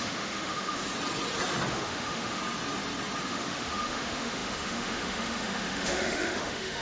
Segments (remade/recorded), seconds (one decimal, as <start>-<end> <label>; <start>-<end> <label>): 0.0-0.8 remade; 0.8-1.7 recorded; 1.7-2.4 remade; 2.4-3.2 recorded; 3.2-6.8 remade